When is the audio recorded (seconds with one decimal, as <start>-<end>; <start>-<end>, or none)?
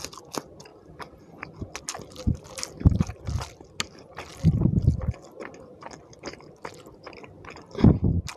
0.0-4.3; 4.9-8.4